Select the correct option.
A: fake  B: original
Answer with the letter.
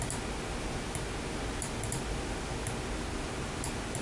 B